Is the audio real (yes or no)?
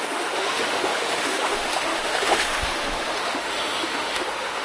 no